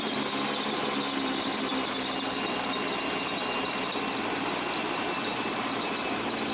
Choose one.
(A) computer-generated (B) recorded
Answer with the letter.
B